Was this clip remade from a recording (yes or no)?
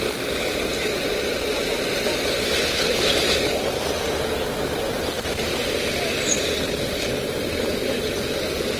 no